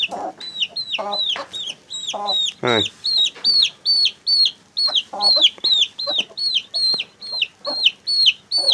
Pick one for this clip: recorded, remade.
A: recorded